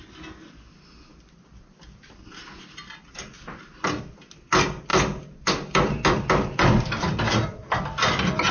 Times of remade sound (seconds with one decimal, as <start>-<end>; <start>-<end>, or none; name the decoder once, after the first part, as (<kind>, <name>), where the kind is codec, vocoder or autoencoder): none